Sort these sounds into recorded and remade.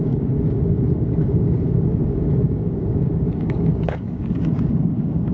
remade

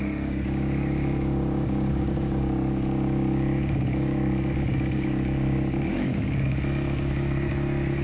remade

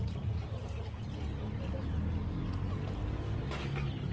recorded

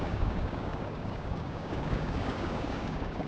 remade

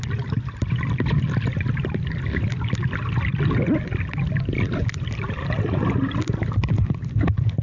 recorded